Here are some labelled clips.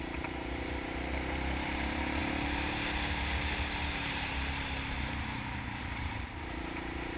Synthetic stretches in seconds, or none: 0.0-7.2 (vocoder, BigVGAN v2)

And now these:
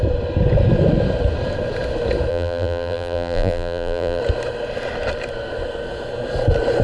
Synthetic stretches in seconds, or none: 2.3-4.2 (vocoder, BigVGAN v2)

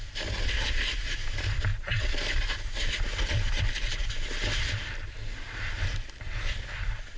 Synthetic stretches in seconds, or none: none